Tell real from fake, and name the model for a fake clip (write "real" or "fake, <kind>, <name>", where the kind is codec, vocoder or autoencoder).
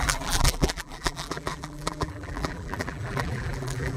fake, vocoder, BigVGAN v2